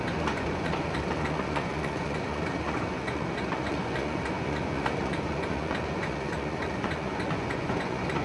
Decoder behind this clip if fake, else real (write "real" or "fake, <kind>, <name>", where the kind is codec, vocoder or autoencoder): fake, vocoder, Vocos